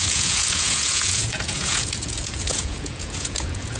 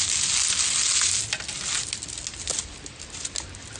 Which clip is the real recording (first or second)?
second